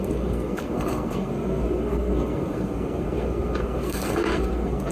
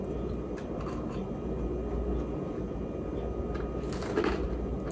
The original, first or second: second